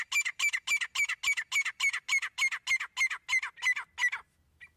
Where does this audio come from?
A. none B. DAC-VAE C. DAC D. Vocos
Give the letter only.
A